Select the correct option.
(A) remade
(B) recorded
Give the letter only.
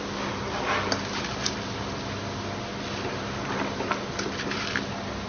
B